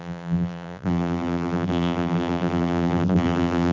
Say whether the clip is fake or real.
fake